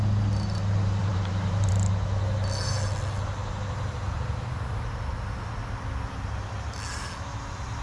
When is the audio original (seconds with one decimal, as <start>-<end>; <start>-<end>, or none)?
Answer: 0.0-1.0; 1.7-7.8